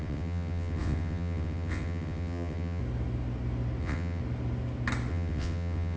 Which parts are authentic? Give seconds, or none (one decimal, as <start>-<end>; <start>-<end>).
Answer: 2.8-3.8; 4.2-5.1